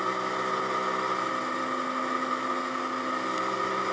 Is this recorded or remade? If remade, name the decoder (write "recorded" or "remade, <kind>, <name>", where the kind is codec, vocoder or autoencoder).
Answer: recorded